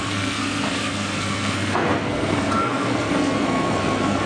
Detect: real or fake fake